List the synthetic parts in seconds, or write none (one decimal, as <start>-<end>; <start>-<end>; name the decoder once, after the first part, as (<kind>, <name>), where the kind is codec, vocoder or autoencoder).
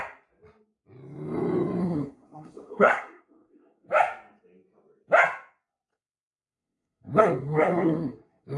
1.8-3.9 (codec, SNAC); 5.9-8.6